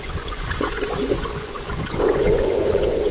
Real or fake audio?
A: fake